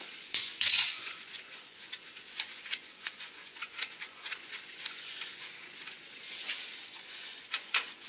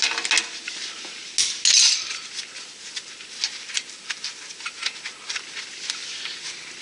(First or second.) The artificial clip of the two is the first